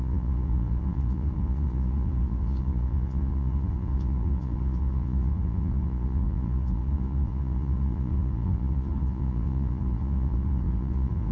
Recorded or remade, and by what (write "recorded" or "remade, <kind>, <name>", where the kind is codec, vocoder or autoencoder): remade, vocoder, Vocos